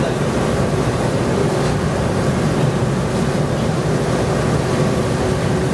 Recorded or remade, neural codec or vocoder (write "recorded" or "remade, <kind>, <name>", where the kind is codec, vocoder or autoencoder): recorded